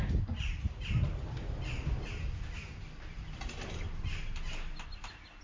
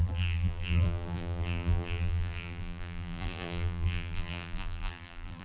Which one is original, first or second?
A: first